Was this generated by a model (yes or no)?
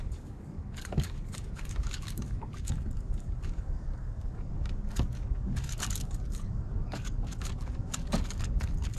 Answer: yes